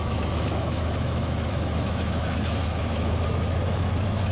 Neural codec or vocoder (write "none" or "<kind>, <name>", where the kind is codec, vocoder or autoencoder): autoencoder, DAC-VAE